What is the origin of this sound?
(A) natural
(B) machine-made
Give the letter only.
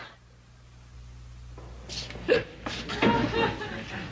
A